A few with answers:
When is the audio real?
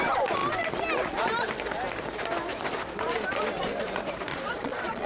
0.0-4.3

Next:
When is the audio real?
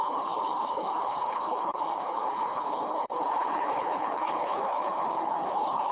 none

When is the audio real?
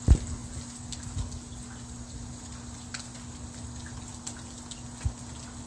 0.0-5.7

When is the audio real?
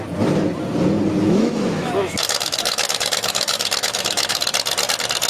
0.0-1.2; 4.4-5.3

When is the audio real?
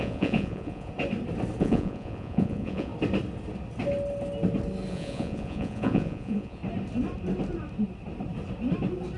0.9-1.6; 2.9-4.9; 6.6-9.2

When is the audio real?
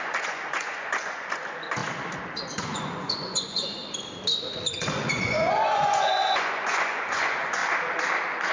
1.8-2.5; 3.8-4.5; 7.6-8.5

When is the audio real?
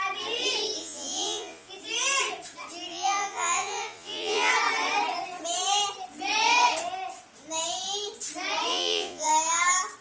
0.0-0.8; 1.7-2.9; 4.5-8.7; 9.3-10.0